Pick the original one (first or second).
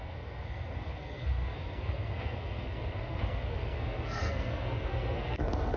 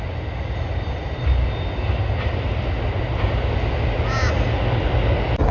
second